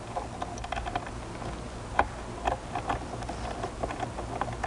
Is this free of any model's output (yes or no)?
yes